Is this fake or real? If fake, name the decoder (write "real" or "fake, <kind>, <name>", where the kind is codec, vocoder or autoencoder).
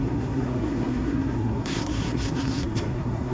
fake, codec, SNAC